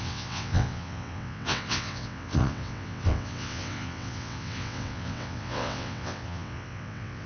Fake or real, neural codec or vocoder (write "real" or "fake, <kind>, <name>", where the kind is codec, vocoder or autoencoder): fake, vocoder, WaveNeXt